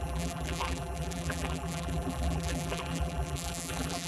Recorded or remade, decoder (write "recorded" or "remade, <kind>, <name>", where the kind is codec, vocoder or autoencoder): remade, vocoder, BigVGAN v2